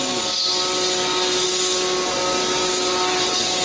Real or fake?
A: real